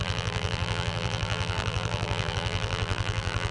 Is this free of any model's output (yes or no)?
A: no